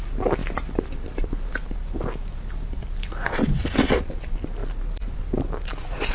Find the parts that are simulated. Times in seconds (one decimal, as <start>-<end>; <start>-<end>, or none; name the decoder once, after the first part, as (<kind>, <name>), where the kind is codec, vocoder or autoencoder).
none